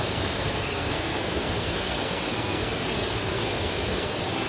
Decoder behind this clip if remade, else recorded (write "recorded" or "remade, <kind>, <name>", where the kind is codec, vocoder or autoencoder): remade, codec, SNAC